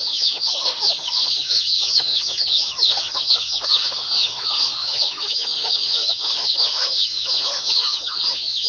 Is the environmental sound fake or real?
fake